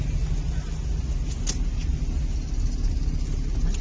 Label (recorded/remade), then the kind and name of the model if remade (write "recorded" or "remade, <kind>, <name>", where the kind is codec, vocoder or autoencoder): recorded